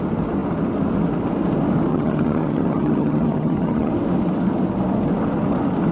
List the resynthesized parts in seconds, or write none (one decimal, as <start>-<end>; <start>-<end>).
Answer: 1.9-3.9